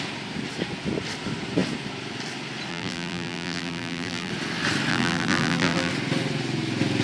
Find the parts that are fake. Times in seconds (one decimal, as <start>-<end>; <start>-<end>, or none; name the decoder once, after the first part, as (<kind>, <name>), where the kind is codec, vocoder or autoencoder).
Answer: 2.7-4.3 (vocoder, BigVGAN v2); 4.9-5.9